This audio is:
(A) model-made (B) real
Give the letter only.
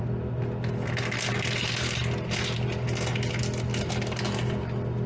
B